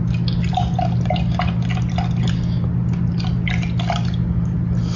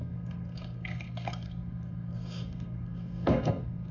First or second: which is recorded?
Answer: first